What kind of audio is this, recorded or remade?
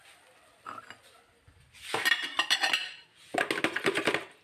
recorded